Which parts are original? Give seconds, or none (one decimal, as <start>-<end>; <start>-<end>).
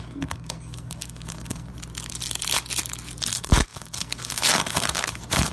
1.7-3.3